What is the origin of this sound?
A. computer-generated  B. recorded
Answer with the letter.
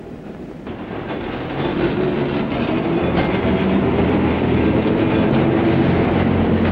B